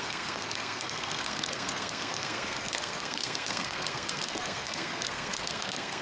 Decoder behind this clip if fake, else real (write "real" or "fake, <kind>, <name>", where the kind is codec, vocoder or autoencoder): fake, codec, SNAC